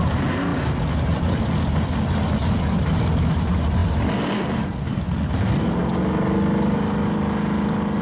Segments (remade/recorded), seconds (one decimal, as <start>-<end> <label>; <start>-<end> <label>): 0.0-8.0 recorded

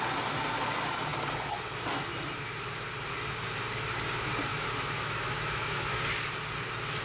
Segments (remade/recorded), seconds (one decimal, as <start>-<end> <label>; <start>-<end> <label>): 0.0-4.5 recorded; 4.5-6.0 remade; 6.0-7.0 recorded

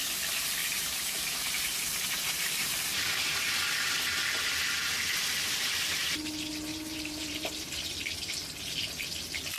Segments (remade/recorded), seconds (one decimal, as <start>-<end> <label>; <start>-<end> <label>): 0.0-0.6 recorded; 0.6-3.5 remade; 3.5-5.2 recorded; 5.2-5.7 remade; 5.7-6.7 recorded; 6.7-7.5 remade; 7.5-9.6 recorded

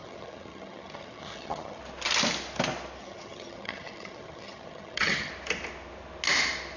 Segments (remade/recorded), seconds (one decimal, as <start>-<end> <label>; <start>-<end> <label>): 0.0-1.8 remade; 1.8-3.0 recorded; 3.0-5.3 remade; 5.3-6.8 recorded